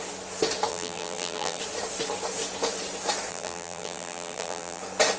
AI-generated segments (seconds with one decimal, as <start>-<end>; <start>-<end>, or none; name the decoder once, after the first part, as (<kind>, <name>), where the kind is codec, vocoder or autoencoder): 0.7-1.6 (vocoder, BigVGAN v2); 3.3-4.8